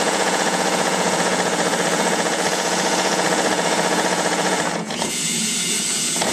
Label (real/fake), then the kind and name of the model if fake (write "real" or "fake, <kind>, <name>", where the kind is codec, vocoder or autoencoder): fake, vocoder, Vocos